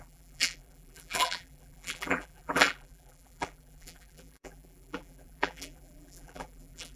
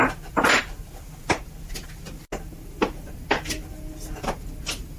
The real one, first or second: second